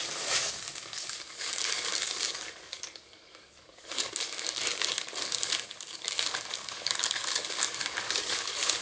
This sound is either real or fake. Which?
fake